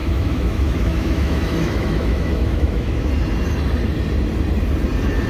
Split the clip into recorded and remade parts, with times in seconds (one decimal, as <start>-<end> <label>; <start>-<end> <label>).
0.0-3.1 remade; 3.1-5.3 recorded